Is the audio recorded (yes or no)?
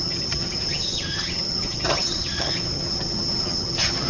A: no